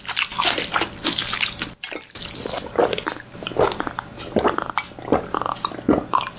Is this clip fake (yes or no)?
no